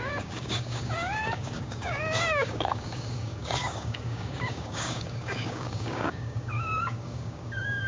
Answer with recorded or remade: remade